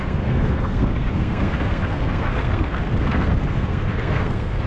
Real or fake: fake